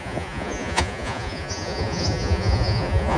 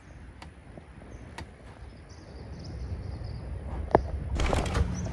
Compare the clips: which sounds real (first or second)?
second